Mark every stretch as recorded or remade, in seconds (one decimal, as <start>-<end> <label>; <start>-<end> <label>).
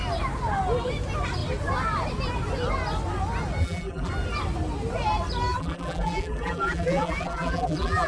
0.0-3.6 recorded; 3.6-4.1 remade; 4.1-5.5 recorded; 5.5-8.1 remade